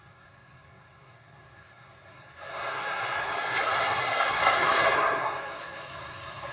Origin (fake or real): fake